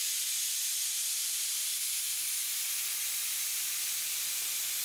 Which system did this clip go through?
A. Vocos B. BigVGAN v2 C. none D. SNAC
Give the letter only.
B